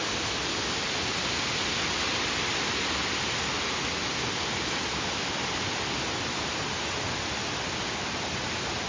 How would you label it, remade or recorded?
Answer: recorded